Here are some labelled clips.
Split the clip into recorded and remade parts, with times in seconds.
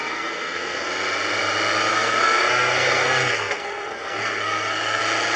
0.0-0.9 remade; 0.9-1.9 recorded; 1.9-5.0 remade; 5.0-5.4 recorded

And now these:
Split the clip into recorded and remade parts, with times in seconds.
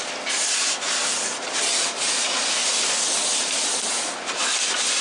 0.0-5.0 recorded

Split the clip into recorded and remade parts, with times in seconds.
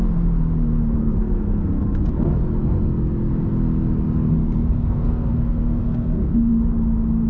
0.0-1.0 recorded; 1.0-2.1 remade; 2.1-4.4 recorded; 4.4-6.5 remade; 6.5-7.3 recorded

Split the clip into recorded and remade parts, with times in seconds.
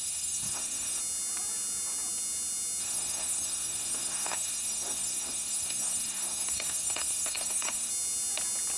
0.0-1.0 remade; 1.0-2.8 recorded; 2.8-7.9 remade; 7.9-8.8 recorded